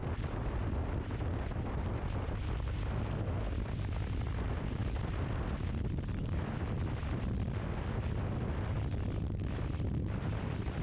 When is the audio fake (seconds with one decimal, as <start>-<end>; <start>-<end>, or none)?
none